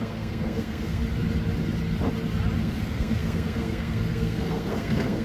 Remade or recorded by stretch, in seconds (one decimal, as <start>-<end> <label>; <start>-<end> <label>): 0.0-1.0 remade; 1.0-2.6 recorded; 2.6-5.2 remade